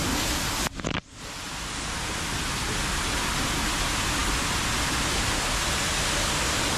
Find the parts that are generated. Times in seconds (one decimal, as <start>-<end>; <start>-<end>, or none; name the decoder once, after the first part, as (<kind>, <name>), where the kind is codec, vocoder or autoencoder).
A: 0.0-1.5 (vocoder, BigVGAN v2)